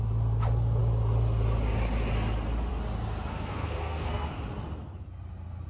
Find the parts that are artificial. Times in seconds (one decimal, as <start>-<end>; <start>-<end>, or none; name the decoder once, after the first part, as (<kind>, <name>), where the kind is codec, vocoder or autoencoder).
3.3-4.3 (codec, SNAC)